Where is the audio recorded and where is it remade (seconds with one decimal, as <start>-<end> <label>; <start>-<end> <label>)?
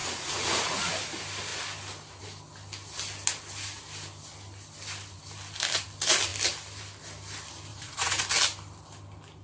0.0-0.9 remade; 0.9-7.7 recorded; 7.7-8.2 remade; 8.2-9.4 recorded